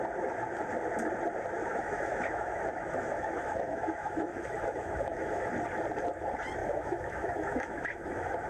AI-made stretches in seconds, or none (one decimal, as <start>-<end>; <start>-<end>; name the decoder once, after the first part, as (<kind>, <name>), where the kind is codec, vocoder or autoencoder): 1.7-5.5 (autoencoder, DAC-VAE); 6.6-8.5